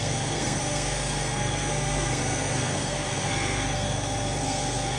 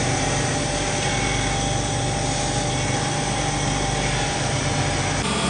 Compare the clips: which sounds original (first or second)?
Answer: second